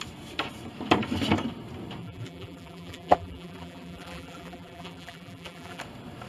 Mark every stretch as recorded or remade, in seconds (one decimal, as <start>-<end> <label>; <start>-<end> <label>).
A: 0.0-2.0 recorded; 2.0-5.8 remade; 5.8-6.3 recorded